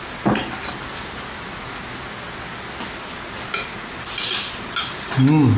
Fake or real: real